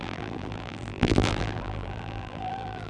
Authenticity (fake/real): fake